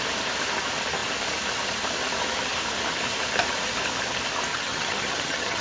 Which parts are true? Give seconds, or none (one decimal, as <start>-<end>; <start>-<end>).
0.0-4.5